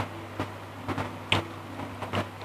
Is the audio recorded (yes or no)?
yes